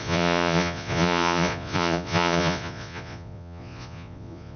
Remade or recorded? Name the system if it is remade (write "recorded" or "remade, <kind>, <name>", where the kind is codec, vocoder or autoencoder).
remade, vocoder, Vocos